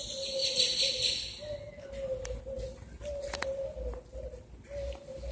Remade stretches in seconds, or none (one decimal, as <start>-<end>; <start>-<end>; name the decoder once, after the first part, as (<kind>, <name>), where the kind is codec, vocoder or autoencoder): none